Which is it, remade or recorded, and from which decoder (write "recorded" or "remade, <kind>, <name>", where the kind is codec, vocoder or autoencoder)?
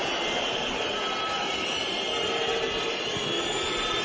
recorded